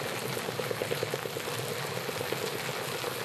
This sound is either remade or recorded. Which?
recorded